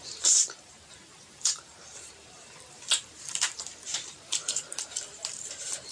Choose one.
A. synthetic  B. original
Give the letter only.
A